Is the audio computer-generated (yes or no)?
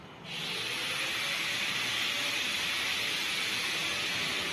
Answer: no